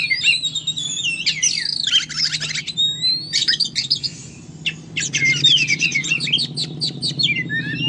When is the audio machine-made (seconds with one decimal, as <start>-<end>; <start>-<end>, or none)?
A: 3.4-4.3; 5.7-6.2